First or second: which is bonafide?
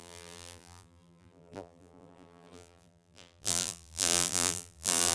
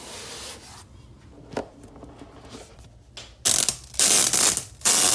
second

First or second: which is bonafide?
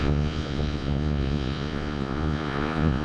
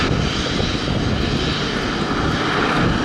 second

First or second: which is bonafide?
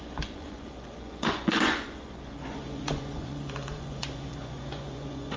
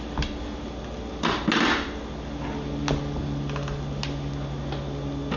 second